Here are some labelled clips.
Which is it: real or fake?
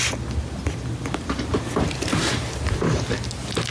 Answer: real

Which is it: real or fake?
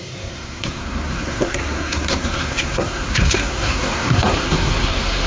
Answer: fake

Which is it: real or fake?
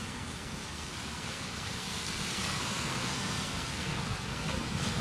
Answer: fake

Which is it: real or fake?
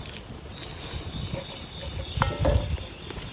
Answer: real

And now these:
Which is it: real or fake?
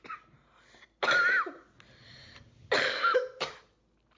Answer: real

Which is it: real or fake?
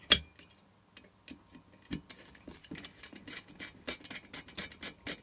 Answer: real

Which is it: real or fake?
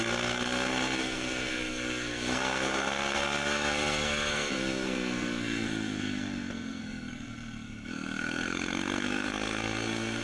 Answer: fake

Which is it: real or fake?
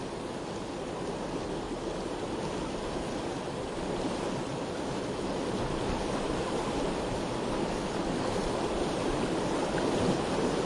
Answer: real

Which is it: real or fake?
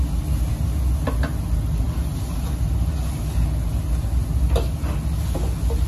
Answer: real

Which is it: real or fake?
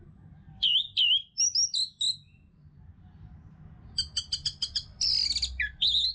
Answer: real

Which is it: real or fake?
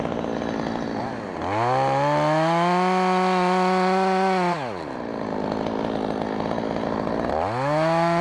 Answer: real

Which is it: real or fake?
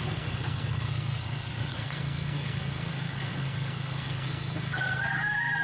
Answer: fake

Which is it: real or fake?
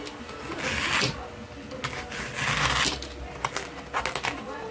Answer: real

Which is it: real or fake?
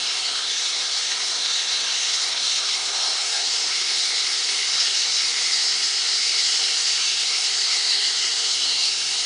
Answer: fake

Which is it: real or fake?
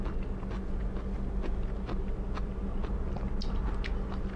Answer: real